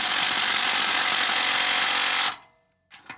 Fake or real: real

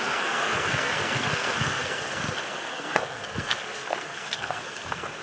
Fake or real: fake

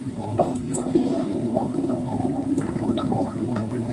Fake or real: fake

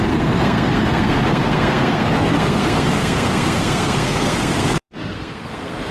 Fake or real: fake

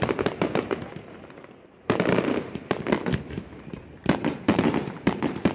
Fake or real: fake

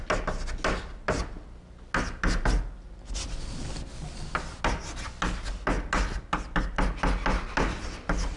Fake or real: real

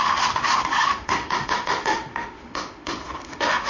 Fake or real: fake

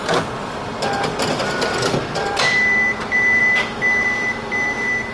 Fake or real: fake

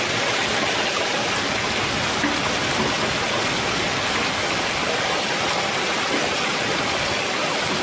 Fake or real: real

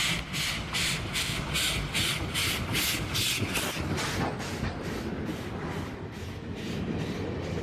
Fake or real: real